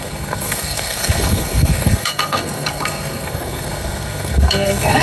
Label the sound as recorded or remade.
remade